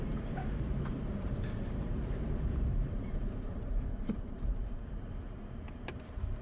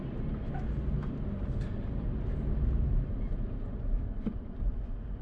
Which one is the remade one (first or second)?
first